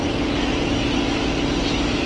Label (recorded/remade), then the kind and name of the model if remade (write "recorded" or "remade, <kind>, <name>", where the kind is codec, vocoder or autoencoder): recorded